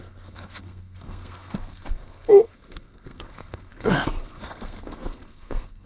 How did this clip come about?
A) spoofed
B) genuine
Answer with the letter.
A